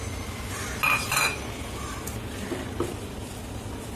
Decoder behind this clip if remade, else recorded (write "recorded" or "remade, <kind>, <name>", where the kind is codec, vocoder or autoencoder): recorded